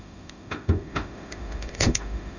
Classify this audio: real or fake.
fake